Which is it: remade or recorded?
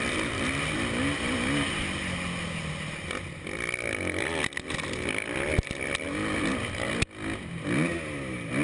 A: recorded